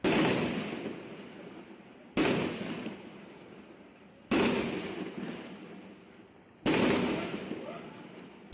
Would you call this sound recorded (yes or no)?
yes